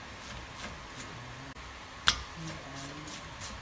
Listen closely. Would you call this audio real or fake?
real